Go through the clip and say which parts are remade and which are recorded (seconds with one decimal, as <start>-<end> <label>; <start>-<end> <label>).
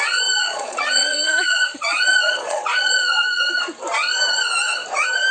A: 0.0-0.4 recorded; 0.4-3.6 remade; 3.6-5.3 recorded